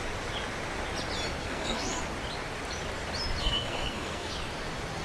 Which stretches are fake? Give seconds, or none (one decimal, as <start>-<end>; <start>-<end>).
1.4-2.0; 3.4-4.3